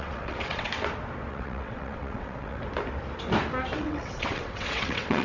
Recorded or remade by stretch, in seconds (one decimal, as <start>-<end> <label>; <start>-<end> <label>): 0.0-0.7 remade; 0.7-1.3 recorded; 1.3-2.6 remade; 2.6-3.8 recorded; 3.8-5.2 remade